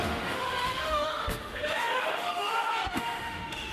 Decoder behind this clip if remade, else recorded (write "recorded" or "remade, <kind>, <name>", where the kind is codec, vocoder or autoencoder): remade, autoencoder, DAC-VAE